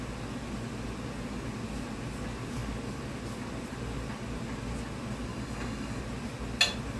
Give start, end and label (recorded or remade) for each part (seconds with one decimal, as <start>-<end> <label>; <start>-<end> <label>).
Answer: 0.0-5.3 recorded; 5.3-6.0 remade; 6.0-7.0 recorded